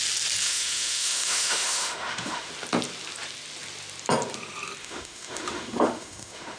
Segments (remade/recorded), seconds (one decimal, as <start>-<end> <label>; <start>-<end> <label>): 0.0-0.4 recorded; 0.4-2.5 remade; 2.5-4.8 recorded; 4.8-6.6 remade